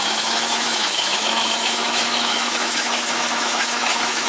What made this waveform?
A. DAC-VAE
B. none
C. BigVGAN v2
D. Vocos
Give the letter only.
A